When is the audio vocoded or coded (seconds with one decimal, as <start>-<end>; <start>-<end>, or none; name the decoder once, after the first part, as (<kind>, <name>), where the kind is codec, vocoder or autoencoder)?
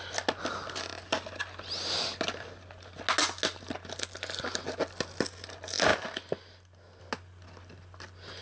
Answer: none